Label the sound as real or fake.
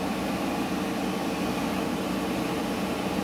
real